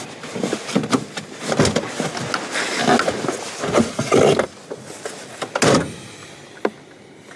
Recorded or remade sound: recorded